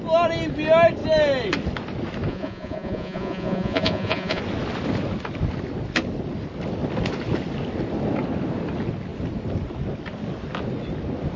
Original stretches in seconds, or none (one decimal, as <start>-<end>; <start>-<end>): 0.0-2.3; 4.4-11.4